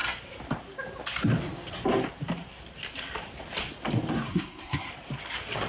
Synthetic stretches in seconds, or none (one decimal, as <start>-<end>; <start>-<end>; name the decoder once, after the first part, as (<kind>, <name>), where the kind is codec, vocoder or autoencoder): 4.3-4.9 (codec, SNAC)